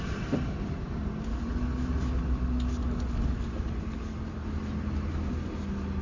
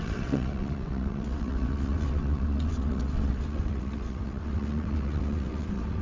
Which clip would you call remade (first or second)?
second